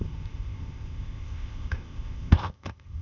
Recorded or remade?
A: remade